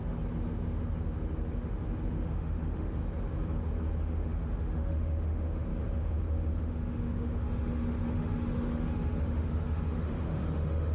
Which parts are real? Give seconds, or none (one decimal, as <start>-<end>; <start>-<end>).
0.0-2.1; 3.0-4.0; 5.7-6.6